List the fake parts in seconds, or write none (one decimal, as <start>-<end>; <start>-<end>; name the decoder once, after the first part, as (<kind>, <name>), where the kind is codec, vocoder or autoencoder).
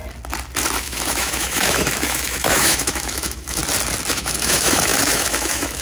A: 0.8-3.6 (autoencoder, DAC-VAE); 4.1-5.8